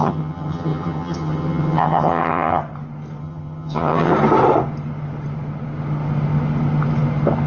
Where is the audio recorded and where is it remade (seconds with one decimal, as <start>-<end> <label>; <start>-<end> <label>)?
0.0-2.6 remade; 2.6-3.2 recorded; 3.2-4.1 remade; 4.1-7.5 recorded